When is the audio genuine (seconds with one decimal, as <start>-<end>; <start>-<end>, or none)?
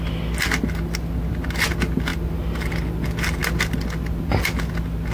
0.0-2.1; 2.7-5.1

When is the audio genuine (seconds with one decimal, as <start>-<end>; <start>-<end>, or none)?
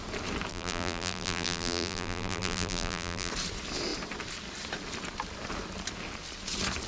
0.0-0.5; 3.3-6.9